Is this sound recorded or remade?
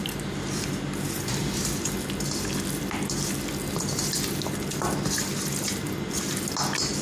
recorded